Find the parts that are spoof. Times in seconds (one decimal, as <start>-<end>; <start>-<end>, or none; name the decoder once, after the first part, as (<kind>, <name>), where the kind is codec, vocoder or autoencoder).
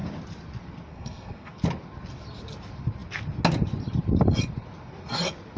0.9-1.5 (codec, SNAC)